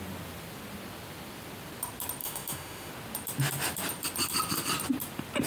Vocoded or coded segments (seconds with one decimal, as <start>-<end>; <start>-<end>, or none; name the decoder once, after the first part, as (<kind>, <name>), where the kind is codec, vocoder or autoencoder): 2.2-2.9 (autoencoder, DAC-VAE)